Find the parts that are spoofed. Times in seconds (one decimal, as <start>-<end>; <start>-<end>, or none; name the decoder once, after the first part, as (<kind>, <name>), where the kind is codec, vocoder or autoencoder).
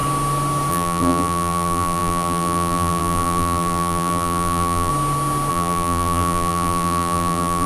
0.7-4.9 (vocoder, BigVGAN v2); 5.5-7.7